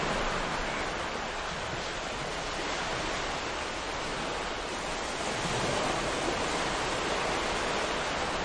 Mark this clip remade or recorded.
recorded